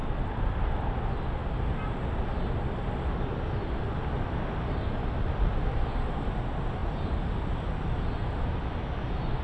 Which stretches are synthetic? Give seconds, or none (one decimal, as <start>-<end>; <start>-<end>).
none